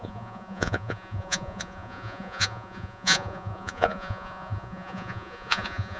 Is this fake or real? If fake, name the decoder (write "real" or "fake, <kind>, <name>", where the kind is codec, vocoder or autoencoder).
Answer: fake, vocoder, Vocos